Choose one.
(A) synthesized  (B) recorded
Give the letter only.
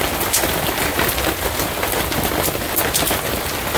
B